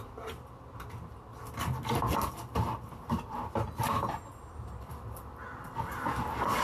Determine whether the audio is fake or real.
real